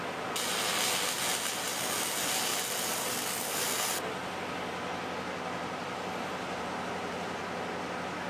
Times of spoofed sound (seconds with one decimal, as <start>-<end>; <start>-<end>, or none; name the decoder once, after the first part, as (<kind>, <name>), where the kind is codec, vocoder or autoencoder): 5.8-7.4 (vocoder, BigVGAN v2)